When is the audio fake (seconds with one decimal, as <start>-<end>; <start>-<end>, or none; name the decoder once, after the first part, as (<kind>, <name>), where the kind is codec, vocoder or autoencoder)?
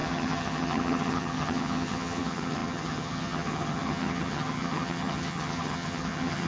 0.0-6.5 (vocoder, HiFi-GAN)